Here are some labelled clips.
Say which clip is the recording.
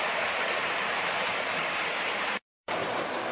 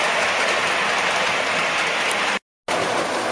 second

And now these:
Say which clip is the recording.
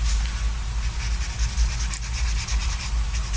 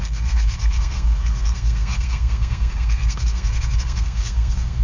first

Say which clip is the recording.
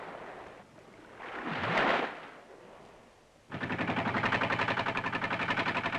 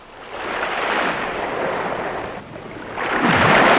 first